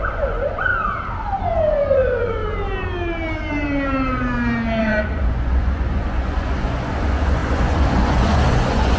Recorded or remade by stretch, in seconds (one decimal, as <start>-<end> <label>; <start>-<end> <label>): 0.0-0.7 remade; 0.7-1.4 recorded; 1.4-2.4 remade; 2.4-4.8 recorded; 4.8-9.0 remade